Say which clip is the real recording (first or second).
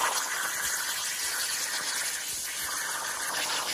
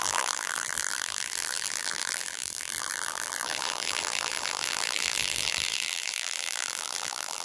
first